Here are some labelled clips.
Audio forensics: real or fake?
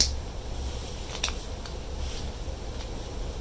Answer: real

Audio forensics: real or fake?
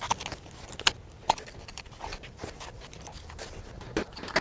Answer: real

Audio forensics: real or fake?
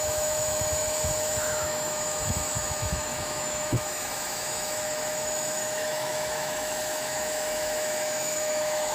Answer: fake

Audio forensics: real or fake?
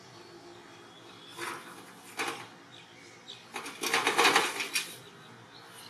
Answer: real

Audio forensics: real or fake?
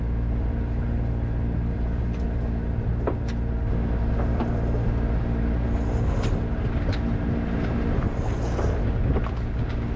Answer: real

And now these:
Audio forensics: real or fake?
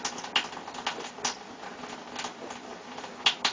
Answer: real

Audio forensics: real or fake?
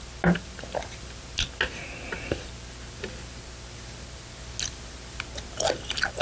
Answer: real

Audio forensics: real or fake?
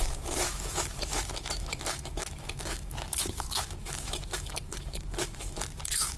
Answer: fake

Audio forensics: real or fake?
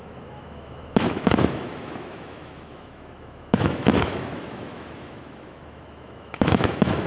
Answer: fake